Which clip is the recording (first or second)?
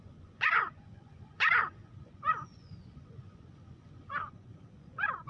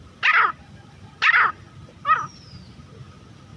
second